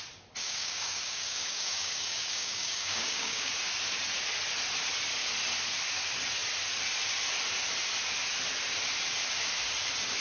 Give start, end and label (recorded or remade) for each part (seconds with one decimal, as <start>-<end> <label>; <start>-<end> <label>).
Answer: 0.0-0.4 recorded; 0.4-3.5 remade; 3.5-10.2 recorded